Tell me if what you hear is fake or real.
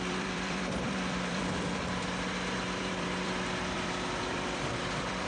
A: fake